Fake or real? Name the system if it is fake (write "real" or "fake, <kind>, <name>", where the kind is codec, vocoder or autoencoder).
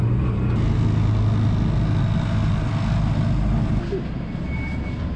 real